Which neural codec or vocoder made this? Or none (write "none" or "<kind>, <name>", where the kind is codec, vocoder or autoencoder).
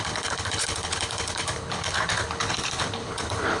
codec, HILCodec